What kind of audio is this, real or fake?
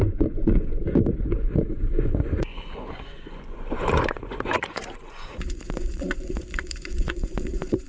fake